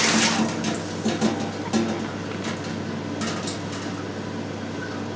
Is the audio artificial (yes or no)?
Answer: no